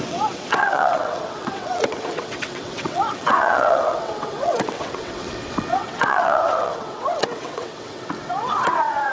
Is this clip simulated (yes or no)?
yes